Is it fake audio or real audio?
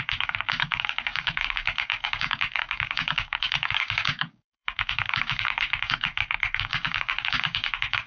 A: fake